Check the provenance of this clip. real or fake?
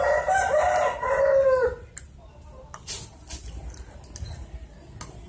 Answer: real